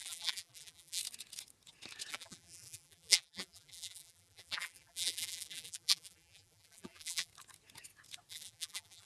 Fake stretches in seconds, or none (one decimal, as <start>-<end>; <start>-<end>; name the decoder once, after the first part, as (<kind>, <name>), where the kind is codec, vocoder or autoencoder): 0.0-1.0 (vocoder, BigVGAN v2); 2.1-7.3; 8.3-9.1